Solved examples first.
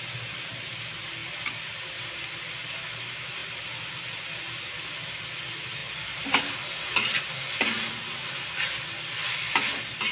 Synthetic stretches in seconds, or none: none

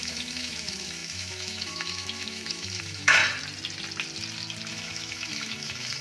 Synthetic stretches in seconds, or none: 0.0-3.2 (autoencoder, DAC-VAE); 4.7-6.0